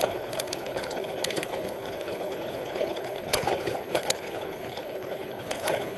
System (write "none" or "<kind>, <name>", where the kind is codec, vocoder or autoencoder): codec, HILCodec